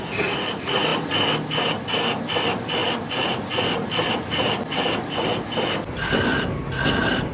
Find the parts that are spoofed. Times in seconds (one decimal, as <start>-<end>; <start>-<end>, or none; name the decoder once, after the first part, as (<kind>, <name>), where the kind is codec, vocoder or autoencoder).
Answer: none